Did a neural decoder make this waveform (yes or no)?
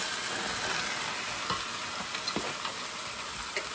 no